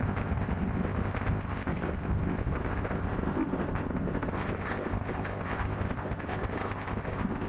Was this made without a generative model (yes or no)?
no